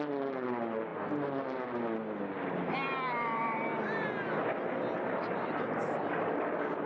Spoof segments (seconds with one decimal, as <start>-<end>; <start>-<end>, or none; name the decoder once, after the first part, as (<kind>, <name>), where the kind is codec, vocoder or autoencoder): none

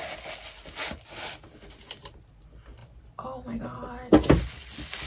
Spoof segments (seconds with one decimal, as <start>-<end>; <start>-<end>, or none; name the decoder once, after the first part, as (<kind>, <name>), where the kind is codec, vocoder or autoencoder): none

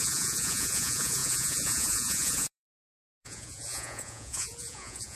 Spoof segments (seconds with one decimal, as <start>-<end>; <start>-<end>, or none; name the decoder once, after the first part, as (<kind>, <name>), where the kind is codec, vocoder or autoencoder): 0.0-5.1 (vocoder, Vocos)

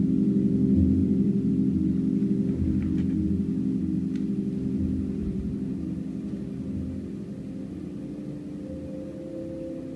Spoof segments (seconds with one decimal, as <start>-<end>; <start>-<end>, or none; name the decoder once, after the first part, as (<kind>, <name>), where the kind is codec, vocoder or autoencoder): 1.0-1.5 (vocoder, BigVGAN v2); 5.2-5.8

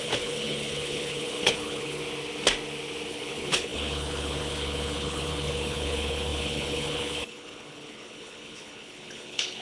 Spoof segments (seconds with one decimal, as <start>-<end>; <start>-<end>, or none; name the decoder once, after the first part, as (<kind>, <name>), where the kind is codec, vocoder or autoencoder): 0.0-2.0 (codec, HILCodec); 3.1-9.6